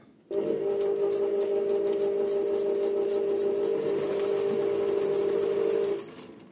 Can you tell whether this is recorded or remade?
recorded